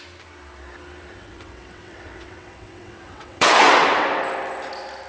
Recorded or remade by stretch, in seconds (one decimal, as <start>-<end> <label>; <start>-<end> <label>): 0.0-1.1 recorded; 1.1-4.2 remade; 4.2-5.1 recorded